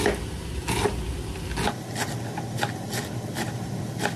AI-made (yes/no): no